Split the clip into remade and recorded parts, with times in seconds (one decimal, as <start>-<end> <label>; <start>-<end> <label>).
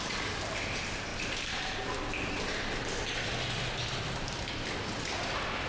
0.0-5.7 recorded